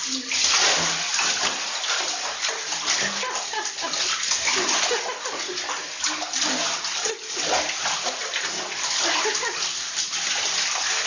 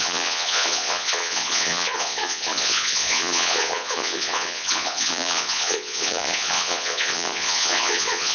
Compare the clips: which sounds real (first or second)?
first